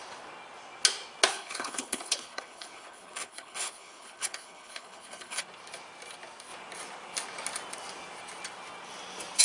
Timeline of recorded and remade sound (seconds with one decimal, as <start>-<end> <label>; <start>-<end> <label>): 0.0-1.3 recorded; 1.3-5.4 remade; 5.4-9.4 recorded